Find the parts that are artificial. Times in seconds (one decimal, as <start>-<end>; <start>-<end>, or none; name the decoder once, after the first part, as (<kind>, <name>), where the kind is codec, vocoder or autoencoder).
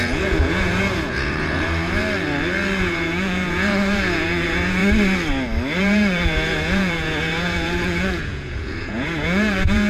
0.0-2.0 (vocoder, Vocos); 2.8-4.8; 5.8-9.9